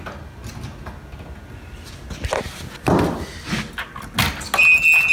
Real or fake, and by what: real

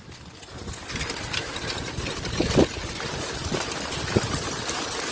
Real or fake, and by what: real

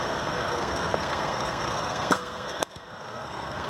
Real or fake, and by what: fake, codec, SNAC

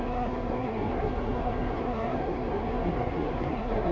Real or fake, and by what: fake, codec, SNAC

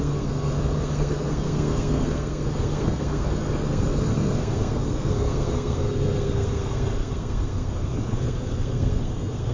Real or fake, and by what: fake, codec, SNAC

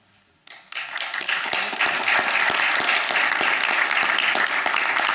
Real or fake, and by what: real